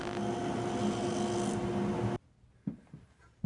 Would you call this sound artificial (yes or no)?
no